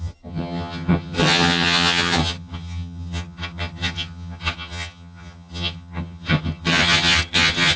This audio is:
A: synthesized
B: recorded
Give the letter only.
A